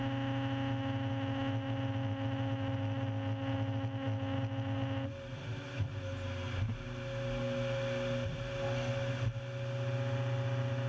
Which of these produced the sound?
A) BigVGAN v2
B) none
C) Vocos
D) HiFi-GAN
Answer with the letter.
B